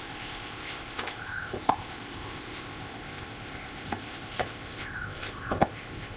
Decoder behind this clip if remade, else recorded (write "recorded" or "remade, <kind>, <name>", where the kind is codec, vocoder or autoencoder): remade, codec, ZipCodec